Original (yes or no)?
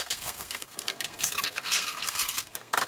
no